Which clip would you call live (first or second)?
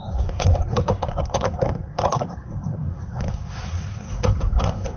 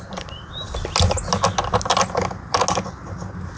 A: second